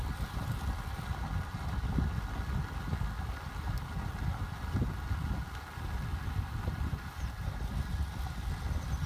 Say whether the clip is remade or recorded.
recorded